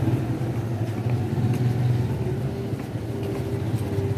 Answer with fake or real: real